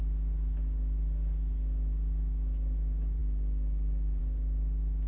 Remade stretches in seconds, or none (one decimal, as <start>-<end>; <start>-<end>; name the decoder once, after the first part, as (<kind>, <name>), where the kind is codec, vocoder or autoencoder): none